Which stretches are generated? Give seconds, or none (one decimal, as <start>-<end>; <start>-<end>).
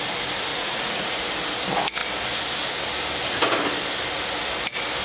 0.5-1.2